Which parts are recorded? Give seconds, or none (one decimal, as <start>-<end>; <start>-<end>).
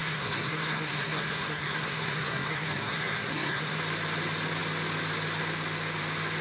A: 3.8-6.4